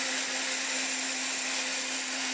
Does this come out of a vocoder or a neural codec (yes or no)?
no